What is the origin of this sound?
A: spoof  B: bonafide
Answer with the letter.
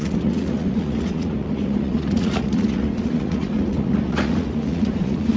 A